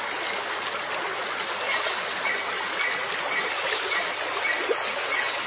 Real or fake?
real